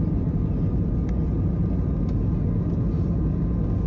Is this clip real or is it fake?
real